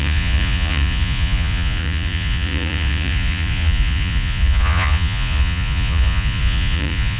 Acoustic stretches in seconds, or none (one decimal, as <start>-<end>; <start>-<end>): none